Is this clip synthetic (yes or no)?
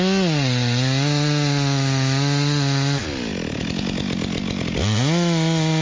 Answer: no